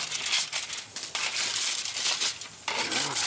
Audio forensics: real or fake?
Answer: real